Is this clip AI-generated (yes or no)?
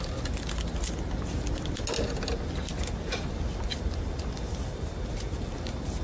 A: no